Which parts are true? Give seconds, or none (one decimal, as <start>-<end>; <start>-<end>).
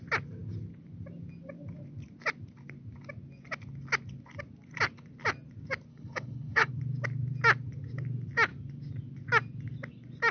0.0-5.9; 6.7-10.3